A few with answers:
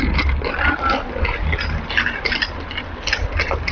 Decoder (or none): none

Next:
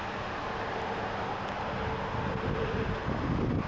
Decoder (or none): none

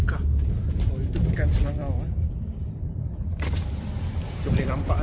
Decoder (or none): vocoder, BigVGAN v2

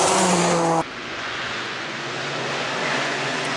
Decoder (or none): vocoder, Vocos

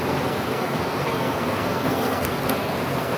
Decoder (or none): codec, SNAC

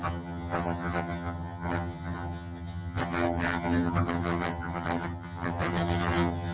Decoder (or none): vocoder, HiFi-GAN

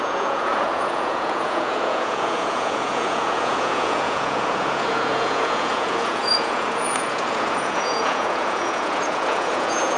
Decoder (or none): vocoder, Vocos